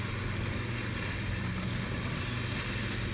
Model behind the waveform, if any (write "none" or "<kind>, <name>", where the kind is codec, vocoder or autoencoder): none